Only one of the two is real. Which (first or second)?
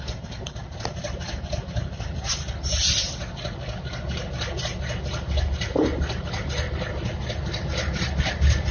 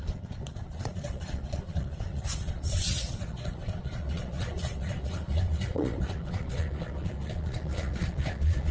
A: first